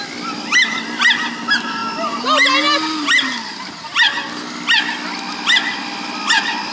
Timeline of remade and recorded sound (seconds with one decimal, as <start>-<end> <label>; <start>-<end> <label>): 0.0-6.7 recorded